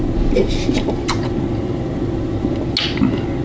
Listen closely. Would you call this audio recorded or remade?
recorded